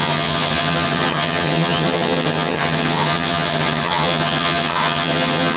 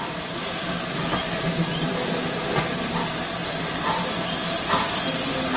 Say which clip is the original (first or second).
second